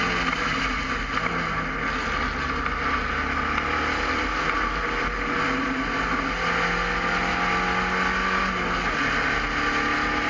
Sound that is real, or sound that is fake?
real